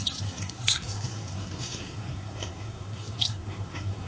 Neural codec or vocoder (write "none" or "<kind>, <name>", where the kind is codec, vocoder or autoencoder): codec, SNAC